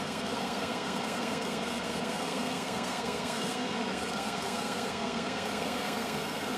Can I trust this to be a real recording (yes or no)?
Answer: no